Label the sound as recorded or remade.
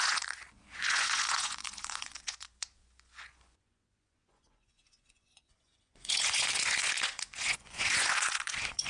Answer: remade